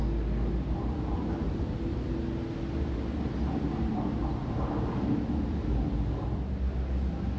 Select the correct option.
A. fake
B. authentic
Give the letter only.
B